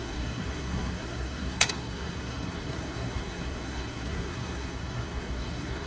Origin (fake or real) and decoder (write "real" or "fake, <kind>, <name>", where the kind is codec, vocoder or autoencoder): fake, codec, SNAC